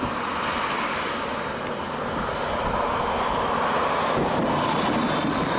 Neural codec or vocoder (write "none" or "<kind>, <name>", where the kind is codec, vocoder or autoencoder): none